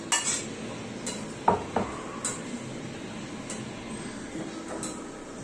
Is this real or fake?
real